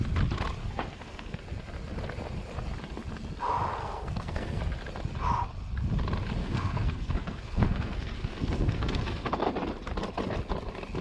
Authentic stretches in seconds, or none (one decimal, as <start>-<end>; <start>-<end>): 0.0-0.6; 1.4-3.8; 4.6-6.4; 9.5-11.0